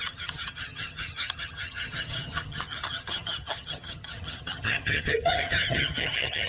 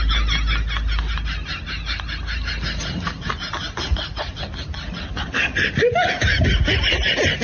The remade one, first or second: first